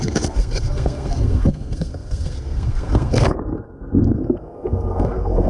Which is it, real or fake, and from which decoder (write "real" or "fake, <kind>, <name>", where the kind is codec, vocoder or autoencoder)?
fake, codec, SNAC